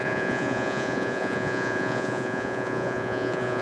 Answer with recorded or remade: remade